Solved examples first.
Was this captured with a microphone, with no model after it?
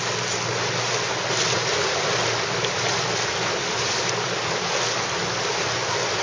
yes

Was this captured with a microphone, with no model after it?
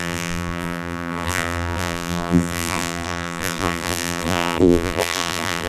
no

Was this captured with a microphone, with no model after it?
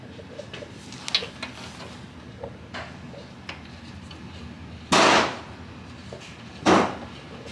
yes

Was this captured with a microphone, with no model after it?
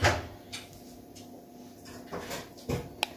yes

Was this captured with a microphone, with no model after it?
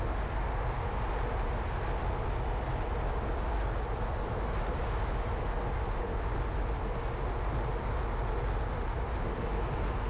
yes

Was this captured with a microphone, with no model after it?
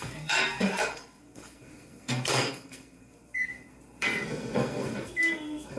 no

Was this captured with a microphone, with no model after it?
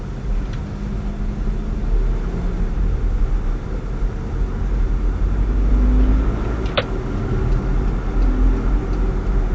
yes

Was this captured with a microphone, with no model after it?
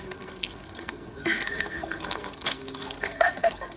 no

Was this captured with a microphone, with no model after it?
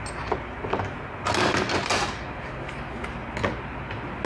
yes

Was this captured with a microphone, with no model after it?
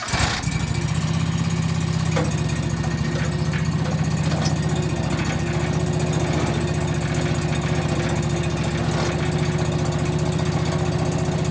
yes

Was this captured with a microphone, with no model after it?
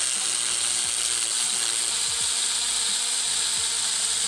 yes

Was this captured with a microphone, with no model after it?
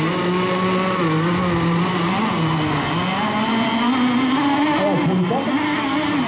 yes